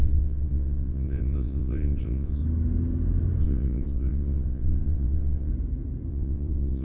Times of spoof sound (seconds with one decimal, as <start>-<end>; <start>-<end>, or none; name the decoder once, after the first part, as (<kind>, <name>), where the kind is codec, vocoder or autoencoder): 0.0-2.4 (vocoder, WaveNeXt); 3.4-5.5; 6.1-6.8